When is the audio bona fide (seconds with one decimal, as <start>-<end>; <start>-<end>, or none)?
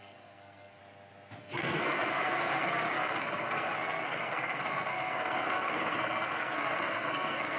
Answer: 0.8-1.4